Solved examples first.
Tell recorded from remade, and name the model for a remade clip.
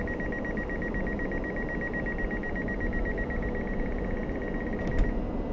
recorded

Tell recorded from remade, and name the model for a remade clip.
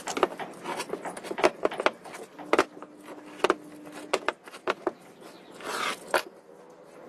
recorded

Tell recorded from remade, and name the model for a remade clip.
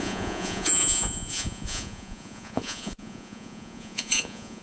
remade, vocoder, Vocos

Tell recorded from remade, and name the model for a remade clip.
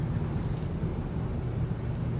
recorded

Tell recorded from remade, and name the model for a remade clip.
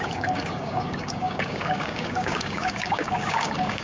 remade, codec, DAC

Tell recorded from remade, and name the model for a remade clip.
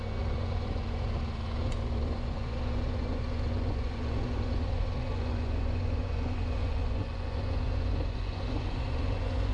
remade, vocoder, Vocos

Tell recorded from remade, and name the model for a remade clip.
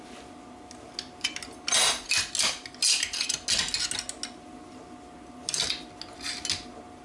recorded